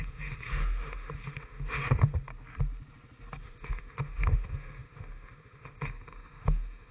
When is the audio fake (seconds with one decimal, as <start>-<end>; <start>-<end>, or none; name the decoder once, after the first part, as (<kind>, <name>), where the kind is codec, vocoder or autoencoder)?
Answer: 0.0-2.3 (autoencoder, DAC-VAE); 3.4-6.9